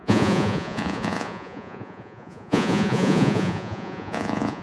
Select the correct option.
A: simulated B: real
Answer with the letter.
A